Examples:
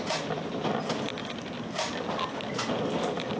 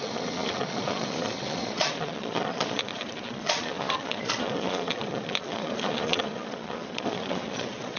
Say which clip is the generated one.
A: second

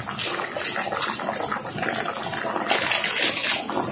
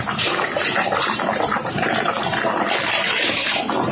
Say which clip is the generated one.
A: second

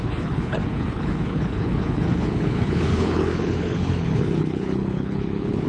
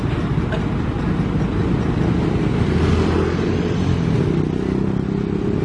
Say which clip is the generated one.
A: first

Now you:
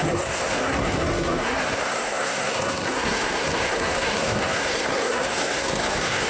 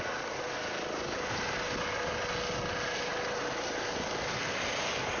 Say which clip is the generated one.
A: first